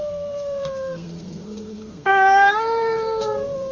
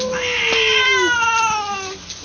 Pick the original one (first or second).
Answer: second